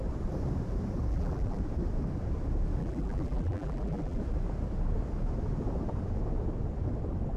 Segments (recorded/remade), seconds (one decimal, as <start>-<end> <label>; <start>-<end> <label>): 0.0-1.1 recorded; 1.1-1.6 remade; 1.6-2.8 recorded; 2.8-4.2 remade; 4.2-7.4 recorded